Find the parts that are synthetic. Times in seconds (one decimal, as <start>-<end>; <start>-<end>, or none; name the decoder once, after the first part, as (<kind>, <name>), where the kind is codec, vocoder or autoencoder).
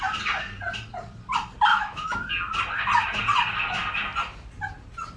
1.7-2.3 (autoencoder, DAC-VAE)